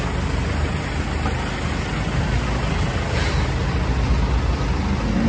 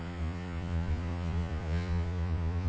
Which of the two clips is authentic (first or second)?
first